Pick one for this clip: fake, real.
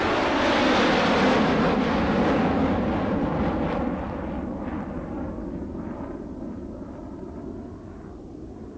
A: real